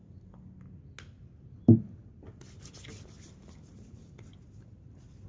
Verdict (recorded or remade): recorded